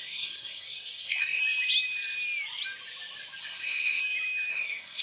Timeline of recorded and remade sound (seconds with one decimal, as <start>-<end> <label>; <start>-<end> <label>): 0.0-1.4 remade; 1.4-3.4 recorded; 3.4-4.0 remade; 4.0-4.5 recorded; 4.5-5.0 remade